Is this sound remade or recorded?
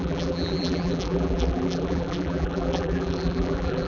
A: remade